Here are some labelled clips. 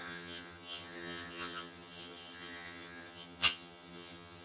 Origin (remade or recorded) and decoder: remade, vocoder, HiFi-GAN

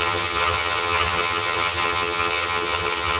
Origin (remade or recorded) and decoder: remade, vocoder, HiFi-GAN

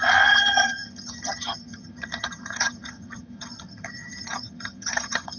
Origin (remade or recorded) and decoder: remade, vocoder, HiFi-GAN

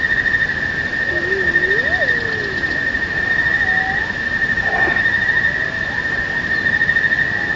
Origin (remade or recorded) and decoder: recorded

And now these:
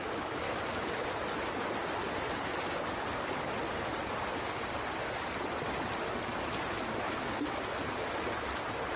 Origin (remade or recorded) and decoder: recorded